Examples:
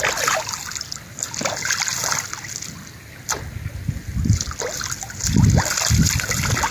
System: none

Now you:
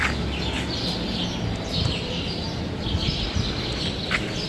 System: none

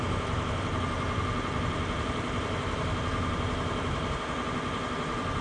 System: none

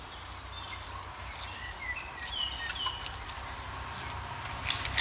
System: none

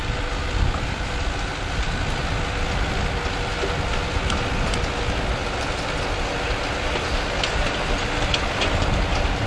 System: none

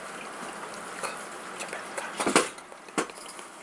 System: none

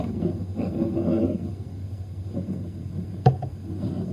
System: codec, SNAC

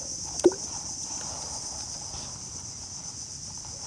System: vocoder, BigVGAN v2